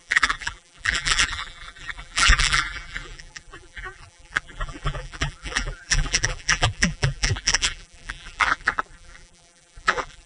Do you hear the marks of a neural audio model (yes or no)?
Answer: yes